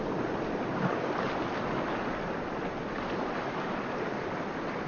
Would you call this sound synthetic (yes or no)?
no